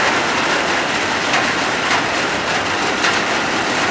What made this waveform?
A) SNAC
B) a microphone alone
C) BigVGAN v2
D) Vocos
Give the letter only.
C